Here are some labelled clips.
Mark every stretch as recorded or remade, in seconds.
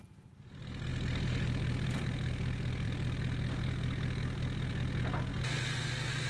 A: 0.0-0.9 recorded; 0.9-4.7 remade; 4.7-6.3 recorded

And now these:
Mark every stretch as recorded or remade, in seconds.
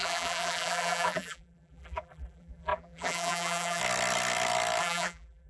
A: 0.0-3.8 remade; 3.8-4.8 recorded; 4.8-5.5 remade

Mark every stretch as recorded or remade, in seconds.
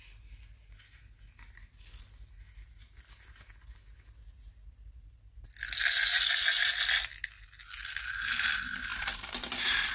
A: 0.0-8.9 recorded; 8.9-9.9 remade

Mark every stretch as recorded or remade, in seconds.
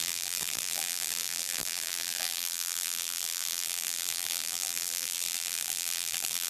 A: 0.0-6.5 remade